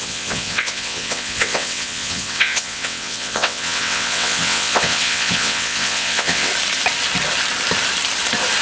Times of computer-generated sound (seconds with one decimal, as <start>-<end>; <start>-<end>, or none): 0.0-6.5